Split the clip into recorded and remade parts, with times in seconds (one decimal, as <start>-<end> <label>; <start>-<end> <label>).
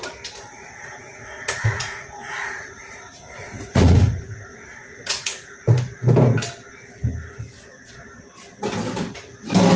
0.0-0.5 recorded; 0.5-5.6 remade; 5.6-9.8 recorded